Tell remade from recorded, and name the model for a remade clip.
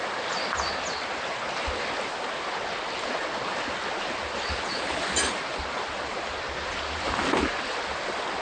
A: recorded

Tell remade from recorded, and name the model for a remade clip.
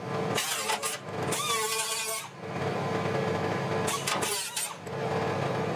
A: recorded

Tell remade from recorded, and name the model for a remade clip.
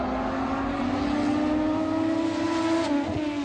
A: recorded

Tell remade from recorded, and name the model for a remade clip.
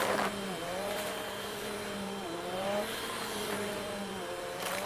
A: remade, vocoder, BigVGAN v2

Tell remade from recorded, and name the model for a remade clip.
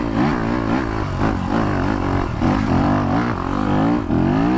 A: recorded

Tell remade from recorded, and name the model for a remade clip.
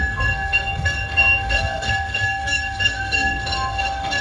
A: remade, codec, SNAC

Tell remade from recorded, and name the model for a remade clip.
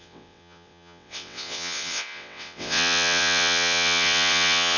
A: remade, vocoder, WaveNeXt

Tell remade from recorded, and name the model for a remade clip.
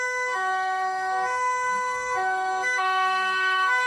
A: remade, codec, SNAC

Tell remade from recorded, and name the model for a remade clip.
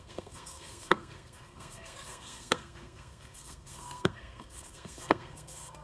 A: remade, codec, SNAC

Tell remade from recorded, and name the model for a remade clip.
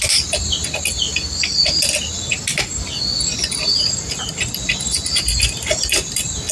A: recorded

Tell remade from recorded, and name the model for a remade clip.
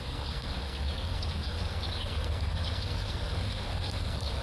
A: remade, codec, SNAC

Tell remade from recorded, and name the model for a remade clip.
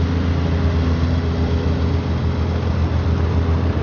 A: recorded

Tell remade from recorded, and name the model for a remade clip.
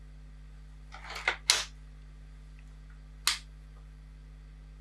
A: recorded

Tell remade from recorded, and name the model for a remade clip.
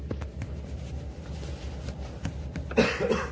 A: recorded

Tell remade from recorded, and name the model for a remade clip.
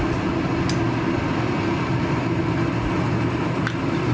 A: recorded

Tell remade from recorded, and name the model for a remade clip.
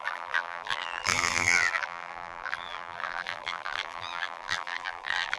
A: remade, vocoder, BigVGAN v2